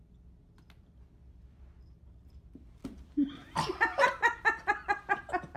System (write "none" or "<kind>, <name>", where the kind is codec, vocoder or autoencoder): none